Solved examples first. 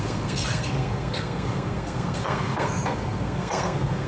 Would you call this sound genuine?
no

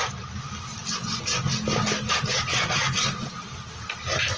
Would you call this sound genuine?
yes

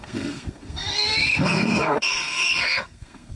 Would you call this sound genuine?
no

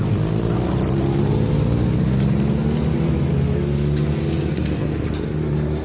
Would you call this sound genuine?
yes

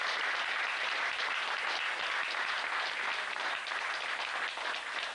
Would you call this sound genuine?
yes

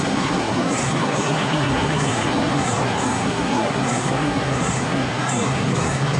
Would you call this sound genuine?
no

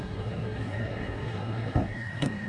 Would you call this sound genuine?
no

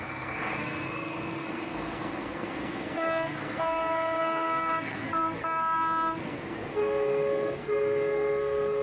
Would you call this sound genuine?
no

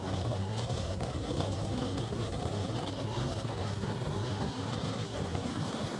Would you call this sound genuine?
no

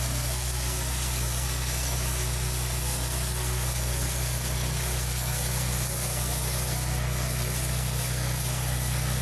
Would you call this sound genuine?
no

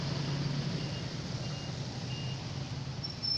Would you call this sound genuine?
yes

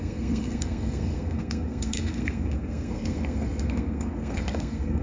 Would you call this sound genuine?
no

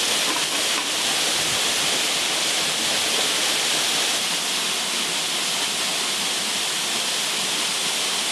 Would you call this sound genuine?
yes